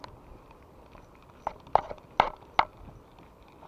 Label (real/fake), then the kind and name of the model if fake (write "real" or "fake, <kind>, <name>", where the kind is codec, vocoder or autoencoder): real